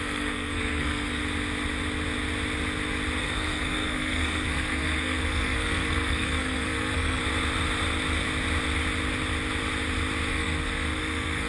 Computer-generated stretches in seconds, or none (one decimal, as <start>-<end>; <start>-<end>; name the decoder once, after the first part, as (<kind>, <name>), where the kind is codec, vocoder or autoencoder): 0.0-1.2 (codec, SNAC); 3.2-7.2; 10.3-11.5